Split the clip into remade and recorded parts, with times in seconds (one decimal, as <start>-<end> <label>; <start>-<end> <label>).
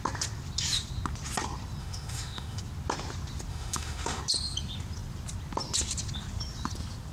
0.0-1.8 recorded; 1.8-2.6 remade; 2.6-3.5 recorded; 3.5-4.2 remade; 4.2-7.1 recorded